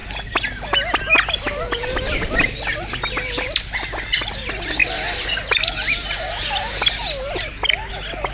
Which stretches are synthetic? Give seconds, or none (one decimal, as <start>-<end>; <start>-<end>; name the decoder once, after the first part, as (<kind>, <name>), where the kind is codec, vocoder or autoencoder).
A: none